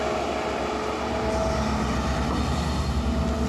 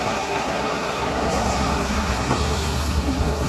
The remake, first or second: second